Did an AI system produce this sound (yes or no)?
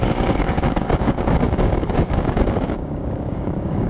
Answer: yes